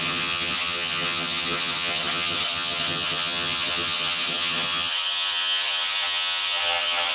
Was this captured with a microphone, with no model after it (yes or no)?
no